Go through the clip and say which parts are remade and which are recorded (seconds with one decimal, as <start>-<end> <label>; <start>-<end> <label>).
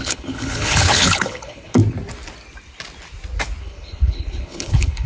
0.0-1.8 remade; 1.8-3.6 recorded; 3.6-5.1 remade